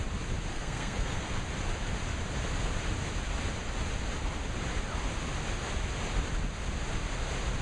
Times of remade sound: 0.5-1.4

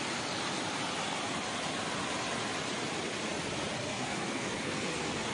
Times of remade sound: 3.8-5.3

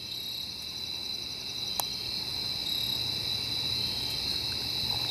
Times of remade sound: none

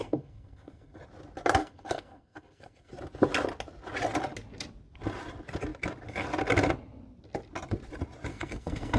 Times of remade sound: 0.0-1.0; 1.6-2.9; 8.3-9.0

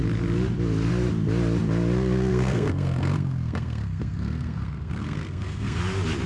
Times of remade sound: 2.3-5.8

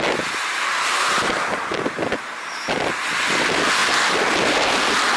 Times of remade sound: none

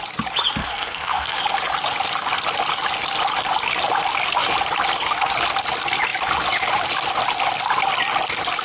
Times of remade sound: 0.6-1.4

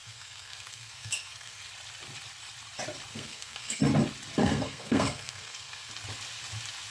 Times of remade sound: 0.0-1.7; 3.1-3.8; 4.4-5.9